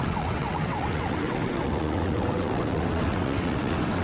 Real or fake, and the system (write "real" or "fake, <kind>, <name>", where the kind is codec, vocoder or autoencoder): fake, vocoder, WaveNeXt